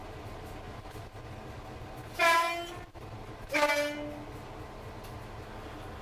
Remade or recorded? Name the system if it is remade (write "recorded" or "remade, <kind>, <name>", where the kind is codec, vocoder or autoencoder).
recorded